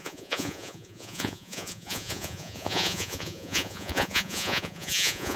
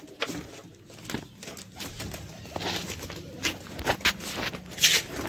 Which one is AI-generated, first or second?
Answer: first